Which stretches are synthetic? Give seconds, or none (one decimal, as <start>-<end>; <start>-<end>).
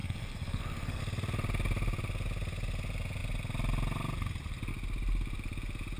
0.0-1.0